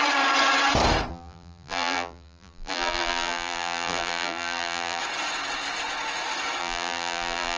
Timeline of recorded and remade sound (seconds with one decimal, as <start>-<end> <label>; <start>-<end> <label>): 0.0-1.1 recorded; 1.1-5.0 remade; 5.0-6.6 recorded; 6.6-7.6 remade